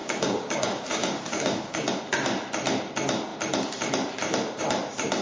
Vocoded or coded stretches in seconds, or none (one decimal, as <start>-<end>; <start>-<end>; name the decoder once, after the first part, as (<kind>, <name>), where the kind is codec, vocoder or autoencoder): 0.0-1.9 (codec, DAC)